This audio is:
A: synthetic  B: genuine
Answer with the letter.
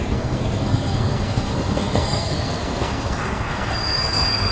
A